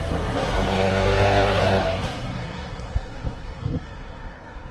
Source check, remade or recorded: remade